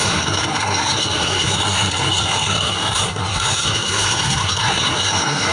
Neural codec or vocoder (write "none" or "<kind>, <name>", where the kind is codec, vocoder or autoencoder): codec, SNAC